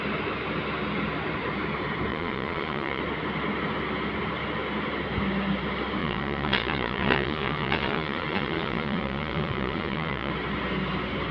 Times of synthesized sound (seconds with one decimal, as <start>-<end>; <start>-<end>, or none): 2.1-3.0; 6.0-10.3